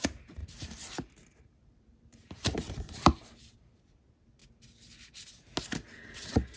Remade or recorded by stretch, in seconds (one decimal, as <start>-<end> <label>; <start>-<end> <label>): 0.0-0.4 recorded; 0.4-3.8 remade; 3.8-6.6 recorded